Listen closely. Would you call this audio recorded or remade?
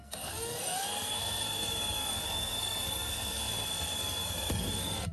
remade